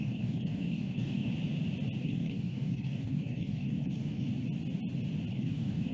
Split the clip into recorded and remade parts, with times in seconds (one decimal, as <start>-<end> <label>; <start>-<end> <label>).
0.0-1.3 remade; 1.3-2.0 recorded; 2.0-4.3 remade; 4.3-5.3 recorded; 5.3-5.9 remade